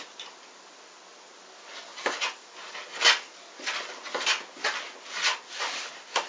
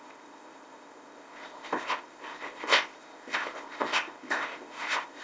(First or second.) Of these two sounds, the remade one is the second